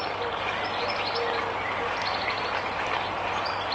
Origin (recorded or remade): recorded